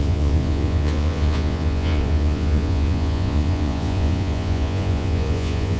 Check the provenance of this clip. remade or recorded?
remade